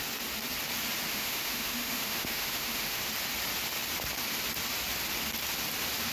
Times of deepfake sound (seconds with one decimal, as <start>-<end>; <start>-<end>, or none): 1.1-3.1

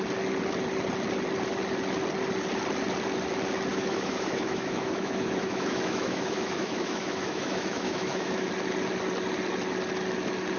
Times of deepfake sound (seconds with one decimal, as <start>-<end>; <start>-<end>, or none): 3.7-8.5

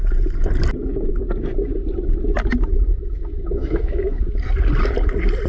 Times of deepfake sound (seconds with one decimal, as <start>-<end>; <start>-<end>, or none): 2.7-4.2

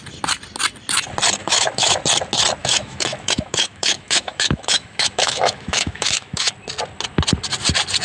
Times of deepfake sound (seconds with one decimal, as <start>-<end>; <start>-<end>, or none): 1.4-2.0; 2.6-6.5

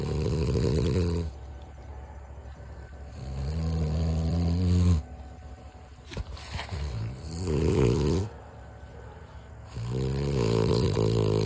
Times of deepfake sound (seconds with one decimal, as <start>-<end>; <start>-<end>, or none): none

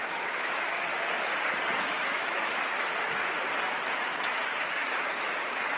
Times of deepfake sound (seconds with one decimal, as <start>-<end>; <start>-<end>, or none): 0.0-0.9; 1.8-2.9; 3.9-5.8

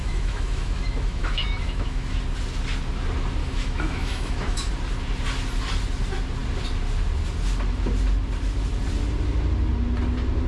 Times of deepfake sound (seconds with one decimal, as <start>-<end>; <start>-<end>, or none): 0.0-2.2; 3.4-4.7

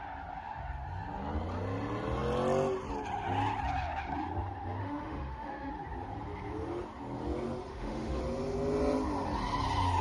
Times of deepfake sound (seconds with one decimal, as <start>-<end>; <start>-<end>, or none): 4.8-5.7; 7.7-8.2